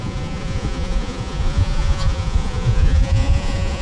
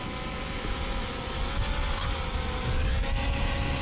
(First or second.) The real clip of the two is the second